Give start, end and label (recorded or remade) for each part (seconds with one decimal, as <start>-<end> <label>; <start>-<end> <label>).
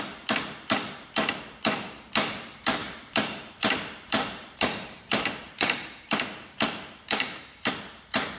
0.0-2.8 recorded; 2.8-7.7 remade; 7.7-8.4 recorded